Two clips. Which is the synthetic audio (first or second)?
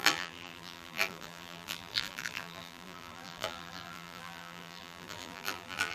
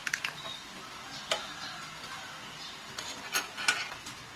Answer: first